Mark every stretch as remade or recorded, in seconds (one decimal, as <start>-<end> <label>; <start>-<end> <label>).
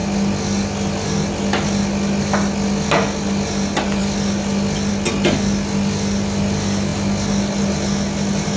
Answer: 0.0-8.6 recorded